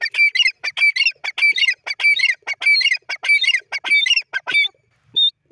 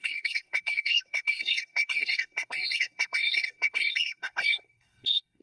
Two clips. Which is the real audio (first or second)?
first